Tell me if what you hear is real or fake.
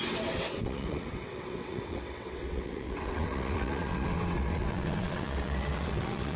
fake